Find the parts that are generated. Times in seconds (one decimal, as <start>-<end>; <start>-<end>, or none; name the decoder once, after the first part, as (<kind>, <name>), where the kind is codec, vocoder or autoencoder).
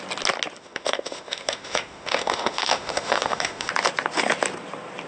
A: 0.6-3.7 (autoencoder, DAC-VAE)